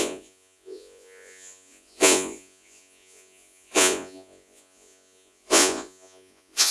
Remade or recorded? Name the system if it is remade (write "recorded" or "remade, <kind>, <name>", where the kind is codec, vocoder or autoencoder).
remade, vocoder, Vocos